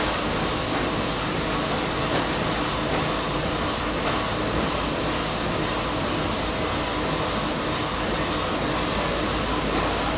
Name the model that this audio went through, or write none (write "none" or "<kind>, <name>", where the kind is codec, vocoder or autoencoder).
none